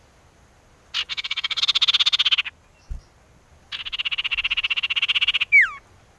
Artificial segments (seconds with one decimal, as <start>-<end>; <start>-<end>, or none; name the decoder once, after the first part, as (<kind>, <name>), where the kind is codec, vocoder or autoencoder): 1.1-1.6 (codec, SNAC)